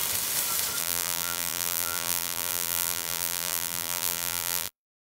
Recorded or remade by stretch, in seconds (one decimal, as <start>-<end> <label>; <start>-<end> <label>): 0.0-0.8 recorded; 0.8-5.1 remade